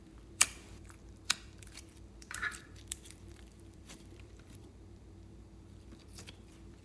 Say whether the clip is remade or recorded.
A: remade